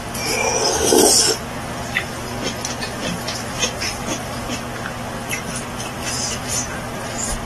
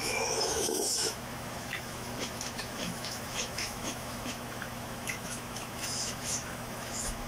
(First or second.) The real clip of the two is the first